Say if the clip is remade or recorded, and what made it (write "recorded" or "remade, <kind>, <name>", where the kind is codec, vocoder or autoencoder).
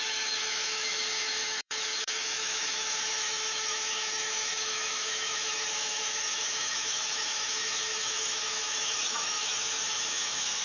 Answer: remade, autoencoder, DAC-VAE